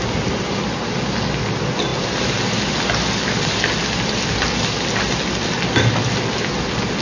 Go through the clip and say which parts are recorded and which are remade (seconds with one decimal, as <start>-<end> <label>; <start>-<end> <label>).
0.0-7.0 recorded